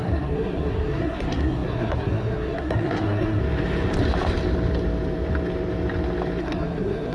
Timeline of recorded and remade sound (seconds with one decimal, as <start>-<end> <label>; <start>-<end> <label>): 0.0-3.4 remade; 3.4-6.4 recorded; 6.4-7.1 remade